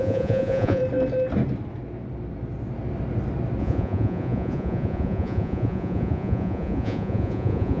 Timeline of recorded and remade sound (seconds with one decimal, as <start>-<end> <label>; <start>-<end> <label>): 0.0-0.8 remade; 0.8-3.6 recorded; 3.6-7.8 remade